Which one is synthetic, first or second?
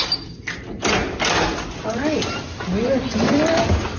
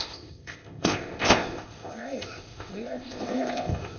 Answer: second